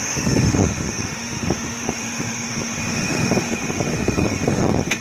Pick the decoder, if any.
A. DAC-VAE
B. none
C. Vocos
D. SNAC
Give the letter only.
A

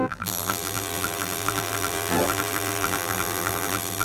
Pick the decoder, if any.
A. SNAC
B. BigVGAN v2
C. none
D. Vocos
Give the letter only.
B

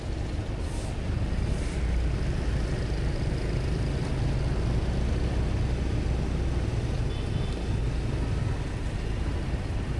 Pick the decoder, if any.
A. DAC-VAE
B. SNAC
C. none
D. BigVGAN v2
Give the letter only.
C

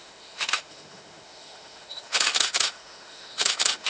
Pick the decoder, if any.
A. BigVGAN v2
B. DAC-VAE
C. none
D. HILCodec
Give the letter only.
B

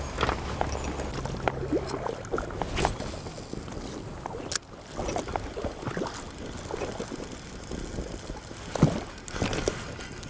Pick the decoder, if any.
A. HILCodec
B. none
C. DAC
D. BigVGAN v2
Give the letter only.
B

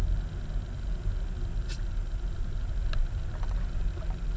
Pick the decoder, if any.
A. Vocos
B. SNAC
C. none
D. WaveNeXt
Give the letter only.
C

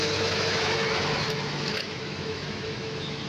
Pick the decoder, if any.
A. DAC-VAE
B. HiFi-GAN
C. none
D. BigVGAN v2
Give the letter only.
A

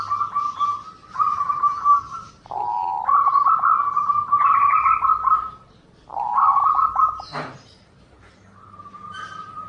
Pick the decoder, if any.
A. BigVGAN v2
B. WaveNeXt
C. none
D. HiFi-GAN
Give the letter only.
A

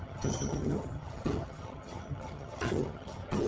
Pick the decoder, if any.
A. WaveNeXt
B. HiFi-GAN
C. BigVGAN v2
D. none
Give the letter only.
B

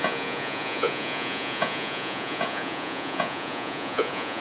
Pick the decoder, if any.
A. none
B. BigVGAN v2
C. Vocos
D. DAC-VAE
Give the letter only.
C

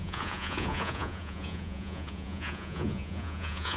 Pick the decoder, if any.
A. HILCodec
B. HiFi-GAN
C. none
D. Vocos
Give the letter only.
D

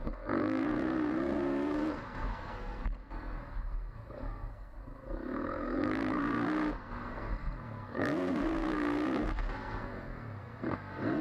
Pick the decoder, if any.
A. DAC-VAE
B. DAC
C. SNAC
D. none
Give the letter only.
C